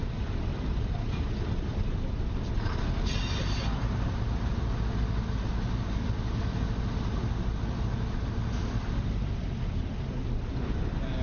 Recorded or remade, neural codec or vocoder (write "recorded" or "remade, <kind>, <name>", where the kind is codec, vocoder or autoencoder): recorded